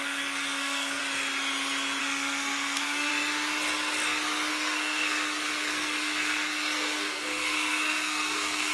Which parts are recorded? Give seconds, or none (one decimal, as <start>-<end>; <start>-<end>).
1.0-2.0; 3.1-4.5